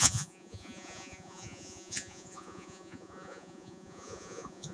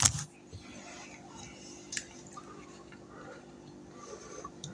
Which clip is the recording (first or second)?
second